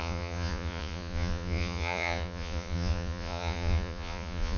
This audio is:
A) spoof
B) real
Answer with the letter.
A